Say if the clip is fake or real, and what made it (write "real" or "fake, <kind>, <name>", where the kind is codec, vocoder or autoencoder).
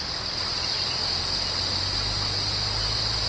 real